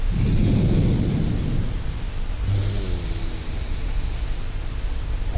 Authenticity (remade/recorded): recorded